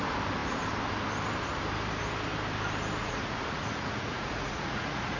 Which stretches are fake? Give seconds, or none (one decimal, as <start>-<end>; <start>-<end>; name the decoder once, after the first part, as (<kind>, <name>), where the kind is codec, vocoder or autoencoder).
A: 3.0-5.2 (vocoder, Vocos)